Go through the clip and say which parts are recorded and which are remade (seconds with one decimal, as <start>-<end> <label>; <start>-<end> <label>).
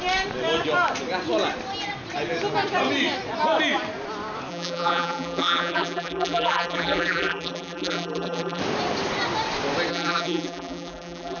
0.0-4.5 recorded; 4.5-8.6 remade; 8.6-9.9 recorded; 9.9-11.4 remade